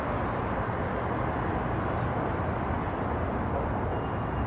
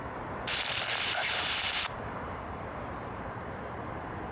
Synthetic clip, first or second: second